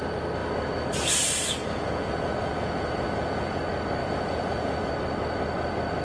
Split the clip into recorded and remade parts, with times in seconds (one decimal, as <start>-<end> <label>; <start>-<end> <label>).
0.0-1.6 recorded; 1.6-3.6 remade; 3.6-4.0 recorded; 4.0-4.9 remade; 4.9-6.0 recorded